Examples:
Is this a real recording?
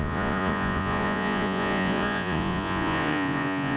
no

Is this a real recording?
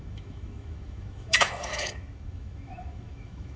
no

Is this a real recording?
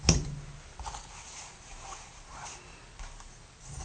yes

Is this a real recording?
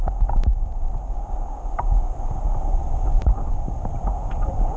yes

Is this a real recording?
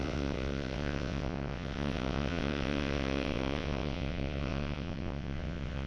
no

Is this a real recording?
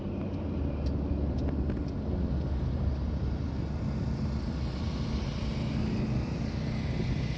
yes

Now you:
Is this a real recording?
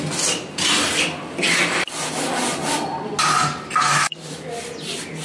yes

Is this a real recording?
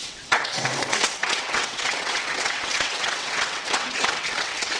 no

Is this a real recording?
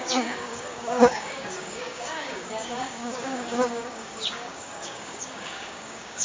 no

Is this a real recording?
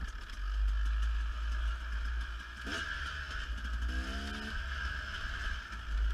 yes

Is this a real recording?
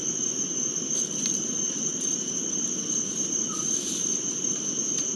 no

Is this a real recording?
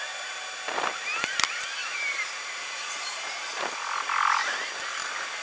yes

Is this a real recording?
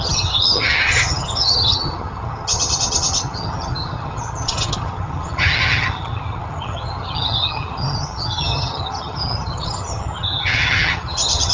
no